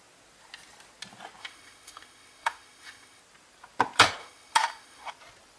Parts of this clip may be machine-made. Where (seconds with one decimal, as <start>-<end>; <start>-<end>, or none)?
1.4-3.2; 4.2-5.1

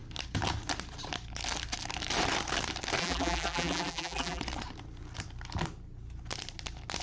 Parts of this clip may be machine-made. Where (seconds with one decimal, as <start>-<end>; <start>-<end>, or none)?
3.0-4.4

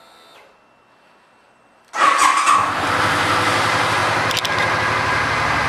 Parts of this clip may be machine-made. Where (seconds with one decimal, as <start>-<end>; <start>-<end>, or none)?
none

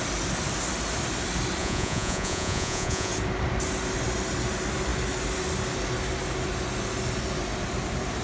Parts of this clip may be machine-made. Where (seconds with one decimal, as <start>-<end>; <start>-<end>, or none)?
1.6-3.1

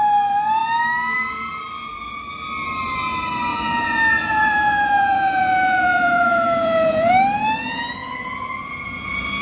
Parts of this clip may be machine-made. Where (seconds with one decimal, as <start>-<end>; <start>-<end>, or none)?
3.5-7.1; 8.0-9.4

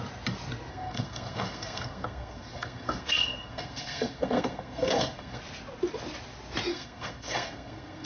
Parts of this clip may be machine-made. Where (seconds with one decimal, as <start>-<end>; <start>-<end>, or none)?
0.7-5.4; 6.7-8.1